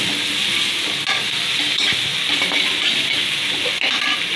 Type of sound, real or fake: real